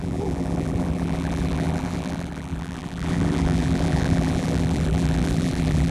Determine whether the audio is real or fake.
fake